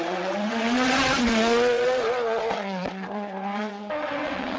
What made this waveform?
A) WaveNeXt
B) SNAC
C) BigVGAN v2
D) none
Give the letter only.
A